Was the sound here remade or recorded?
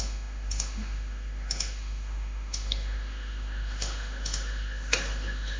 remade